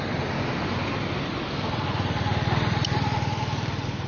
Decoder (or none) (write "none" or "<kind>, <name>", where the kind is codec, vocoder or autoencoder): none